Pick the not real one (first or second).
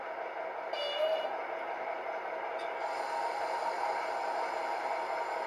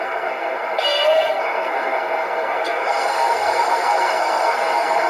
second